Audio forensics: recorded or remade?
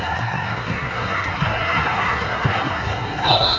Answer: remade